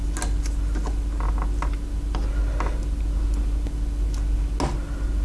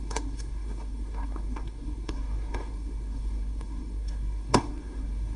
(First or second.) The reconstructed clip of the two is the second